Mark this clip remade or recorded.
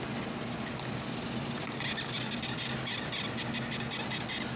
recorded